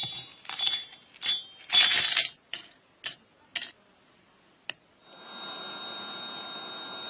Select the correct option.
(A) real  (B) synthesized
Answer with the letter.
A